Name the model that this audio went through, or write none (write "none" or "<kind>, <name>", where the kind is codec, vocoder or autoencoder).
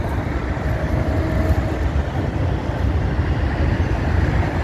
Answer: none